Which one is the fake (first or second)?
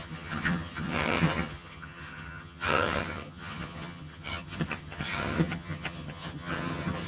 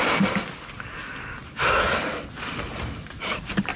first